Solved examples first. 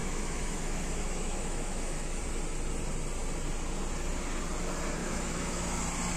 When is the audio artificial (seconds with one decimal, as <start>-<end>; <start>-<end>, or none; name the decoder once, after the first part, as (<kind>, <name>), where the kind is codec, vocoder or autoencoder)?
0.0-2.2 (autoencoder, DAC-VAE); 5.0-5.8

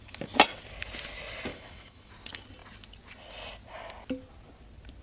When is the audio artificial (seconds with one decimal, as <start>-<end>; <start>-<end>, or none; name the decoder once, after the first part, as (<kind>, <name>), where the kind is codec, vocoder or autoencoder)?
1.5-2.1 (autoencoder, DAC-VAE)

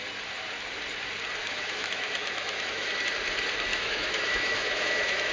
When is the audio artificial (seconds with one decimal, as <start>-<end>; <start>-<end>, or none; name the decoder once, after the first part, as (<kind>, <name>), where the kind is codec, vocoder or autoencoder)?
1.4-2.9 (autoencoder, DAC-VAE); 3.7-5.3

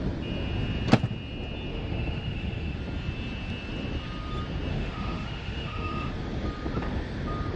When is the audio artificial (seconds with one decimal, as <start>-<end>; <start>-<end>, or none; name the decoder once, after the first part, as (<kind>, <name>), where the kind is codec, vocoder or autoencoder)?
1.7-2.8 (autoencoder, DAC-VAE); 4.7-6.1

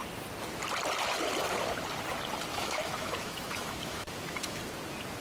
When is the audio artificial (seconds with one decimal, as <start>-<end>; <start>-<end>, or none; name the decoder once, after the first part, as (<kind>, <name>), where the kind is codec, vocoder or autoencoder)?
2.5-4.6 (autoencoder, DAC-VAE)